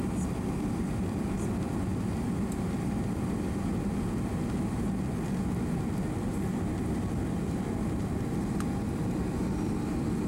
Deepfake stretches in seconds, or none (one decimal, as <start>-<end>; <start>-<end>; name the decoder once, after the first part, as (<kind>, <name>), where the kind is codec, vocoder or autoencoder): none